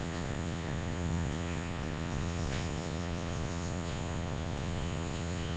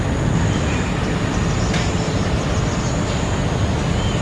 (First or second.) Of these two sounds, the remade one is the first